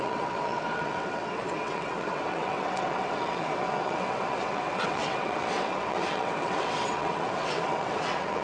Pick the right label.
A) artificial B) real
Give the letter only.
A